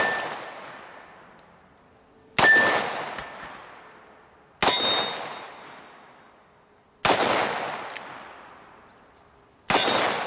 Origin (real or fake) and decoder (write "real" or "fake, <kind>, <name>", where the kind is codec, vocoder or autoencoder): real